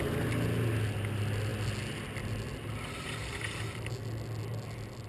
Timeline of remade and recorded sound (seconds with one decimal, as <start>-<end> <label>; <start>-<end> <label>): 0.0-5.1 recorded